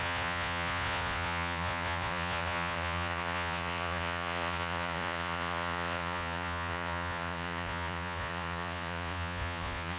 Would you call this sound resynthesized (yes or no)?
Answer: yes